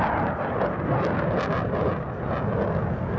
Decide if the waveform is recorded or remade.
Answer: recorded